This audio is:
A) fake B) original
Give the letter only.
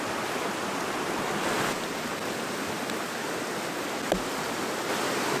B